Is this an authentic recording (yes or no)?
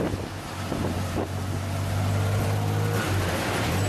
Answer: yes